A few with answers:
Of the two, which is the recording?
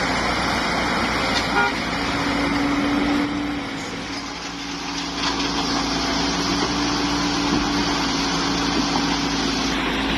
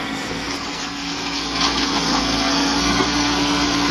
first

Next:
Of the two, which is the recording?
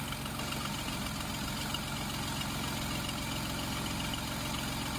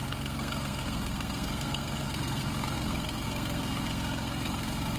first